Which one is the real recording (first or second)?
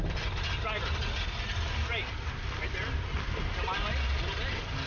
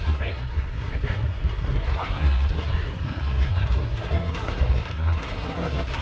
first